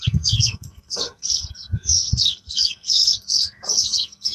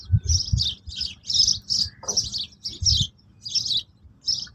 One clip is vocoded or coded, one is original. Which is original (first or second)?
second